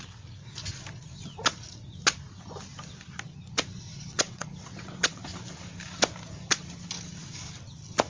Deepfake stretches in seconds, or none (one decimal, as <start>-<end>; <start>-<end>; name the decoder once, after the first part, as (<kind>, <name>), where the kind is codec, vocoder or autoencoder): 3.9-5.2 (vocoder, WaveNeXt)